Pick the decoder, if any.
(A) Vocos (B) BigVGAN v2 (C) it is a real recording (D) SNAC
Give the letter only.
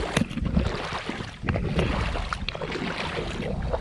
C